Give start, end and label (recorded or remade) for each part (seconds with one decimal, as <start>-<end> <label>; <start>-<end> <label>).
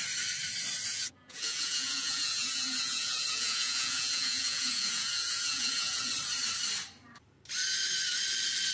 0.0-0.9 recorded; 0.9-6.1 remade; 6.1-8.7 recorded